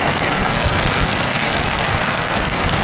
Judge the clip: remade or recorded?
remade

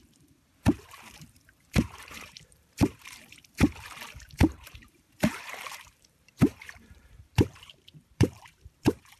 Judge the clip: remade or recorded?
remade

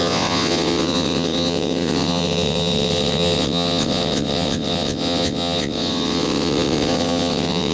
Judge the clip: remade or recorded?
remade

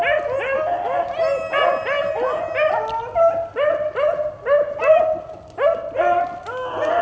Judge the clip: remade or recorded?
recorded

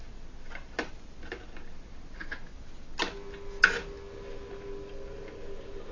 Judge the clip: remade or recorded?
recorded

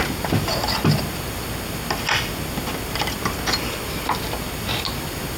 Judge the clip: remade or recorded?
recorded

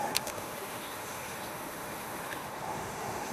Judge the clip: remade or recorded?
remade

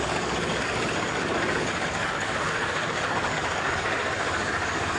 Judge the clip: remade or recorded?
remade